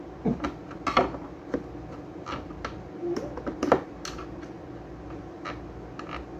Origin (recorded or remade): recorded